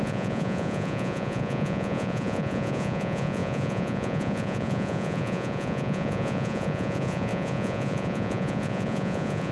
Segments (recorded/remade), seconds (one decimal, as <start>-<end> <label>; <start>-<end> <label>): 0.0-9.5 remade